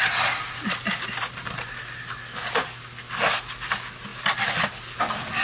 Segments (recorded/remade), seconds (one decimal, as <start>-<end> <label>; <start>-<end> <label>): 0.0-5.4 recorded